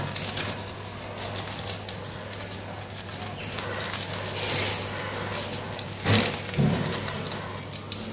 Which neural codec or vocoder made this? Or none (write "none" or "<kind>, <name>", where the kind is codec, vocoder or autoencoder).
none